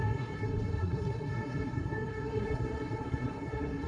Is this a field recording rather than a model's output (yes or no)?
no